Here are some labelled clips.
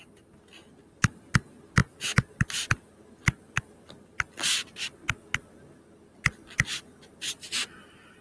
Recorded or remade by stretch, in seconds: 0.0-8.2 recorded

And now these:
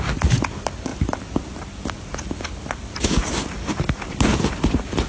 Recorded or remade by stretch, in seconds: 0.0-5.1 recorded

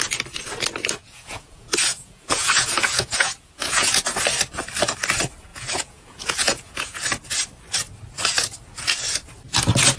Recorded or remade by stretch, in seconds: 0.0-1.0 recorded; 1.0-4.0 remade; 4.0-5.5 recorded; 5.5-7.0 remade; 7.0-10.0 recorded

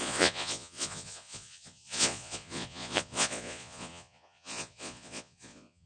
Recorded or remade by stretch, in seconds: 0.0-5.9 remade

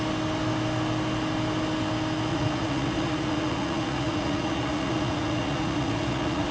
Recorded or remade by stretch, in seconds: 0.0-2.3 recorded; 2.3-6.5 remade